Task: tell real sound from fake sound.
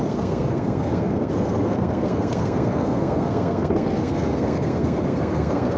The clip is fake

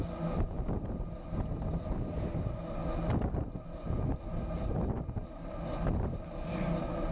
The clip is real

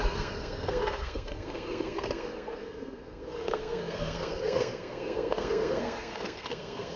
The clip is fake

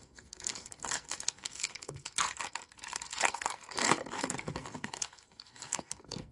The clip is fake